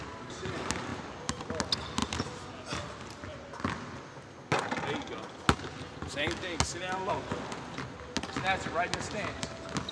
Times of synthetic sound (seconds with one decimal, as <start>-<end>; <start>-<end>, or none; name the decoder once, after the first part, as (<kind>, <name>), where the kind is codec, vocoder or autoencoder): none